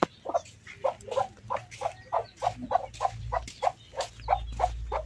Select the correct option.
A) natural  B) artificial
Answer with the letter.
A